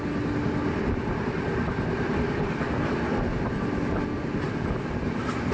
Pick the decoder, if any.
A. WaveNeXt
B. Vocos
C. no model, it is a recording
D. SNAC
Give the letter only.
C